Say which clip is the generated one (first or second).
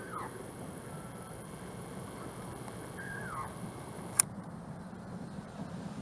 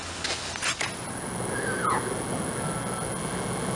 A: first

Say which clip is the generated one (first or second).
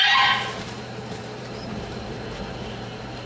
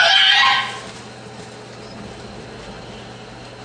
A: first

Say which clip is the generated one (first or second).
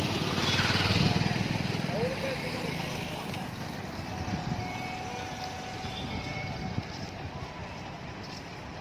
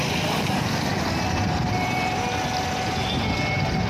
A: first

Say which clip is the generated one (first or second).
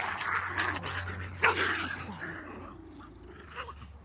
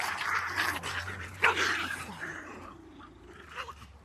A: second